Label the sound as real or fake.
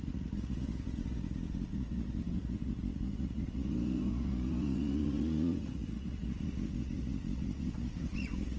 fake